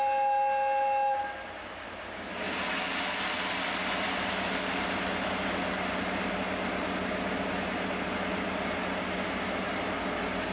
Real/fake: real